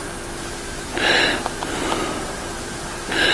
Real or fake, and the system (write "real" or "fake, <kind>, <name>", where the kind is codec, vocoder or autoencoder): real